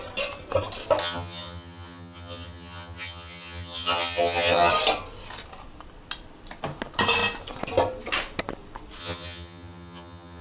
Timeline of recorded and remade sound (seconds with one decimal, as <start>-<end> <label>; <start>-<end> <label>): 0.0-1.0 recorded; 1.0-4.7 remade; 4.7-9.0 recorded; 9.0-10.4 remade